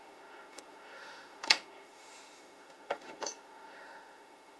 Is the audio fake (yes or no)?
yes